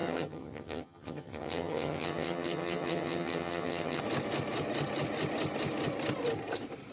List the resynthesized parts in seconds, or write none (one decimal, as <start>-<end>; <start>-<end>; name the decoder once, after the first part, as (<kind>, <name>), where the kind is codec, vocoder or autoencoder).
0.0-4.0 (vocoder, HiFi-GAN)